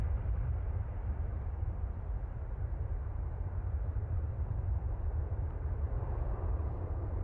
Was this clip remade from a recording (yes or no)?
yes